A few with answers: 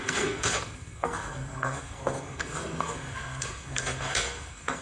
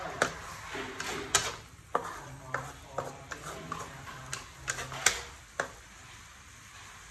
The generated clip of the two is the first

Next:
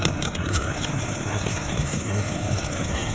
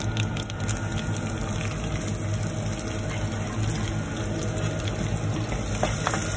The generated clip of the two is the first